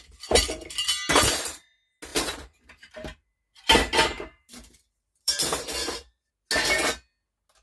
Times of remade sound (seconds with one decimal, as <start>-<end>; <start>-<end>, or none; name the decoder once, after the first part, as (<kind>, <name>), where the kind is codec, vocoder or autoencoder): 2.1-6.3 (vocoder, BigVGAN v2)